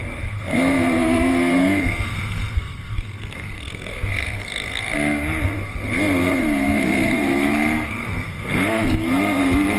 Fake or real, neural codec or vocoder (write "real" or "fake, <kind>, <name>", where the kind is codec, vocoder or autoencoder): fake, codec, SNAC